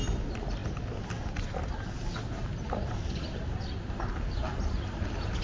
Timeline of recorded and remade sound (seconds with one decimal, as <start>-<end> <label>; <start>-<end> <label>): 0.0-5.4 recorded